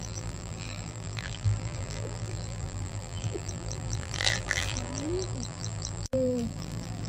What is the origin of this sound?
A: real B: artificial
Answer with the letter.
B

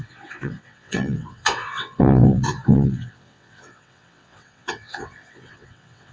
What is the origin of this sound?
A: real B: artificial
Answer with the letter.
B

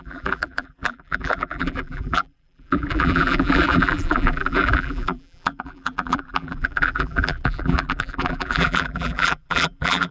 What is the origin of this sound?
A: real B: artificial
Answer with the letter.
B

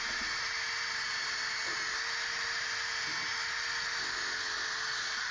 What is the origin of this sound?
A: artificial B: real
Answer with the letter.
B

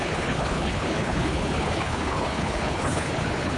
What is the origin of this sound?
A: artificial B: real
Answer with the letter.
A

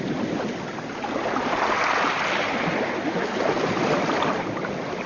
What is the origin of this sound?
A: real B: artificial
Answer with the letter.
B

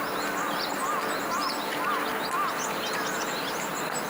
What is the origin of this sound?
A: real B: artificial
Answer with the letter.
A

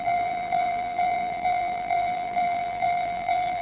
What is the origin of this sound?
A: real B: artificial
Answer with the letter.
B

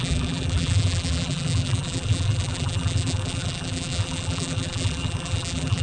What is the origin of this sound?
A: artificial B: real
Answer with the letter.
A